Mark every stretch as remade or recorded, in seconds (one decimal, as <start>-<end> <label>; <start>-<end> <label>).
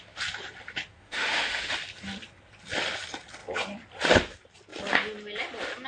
0.0-1.0 recorded; 1.0-1.7 remade; 1.7-5.9 recorded